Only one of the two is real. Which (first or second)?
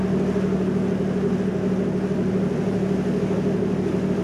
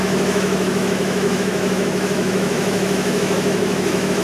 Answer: first